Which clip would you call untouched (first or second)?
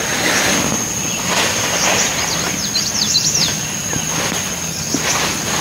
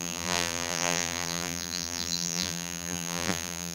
first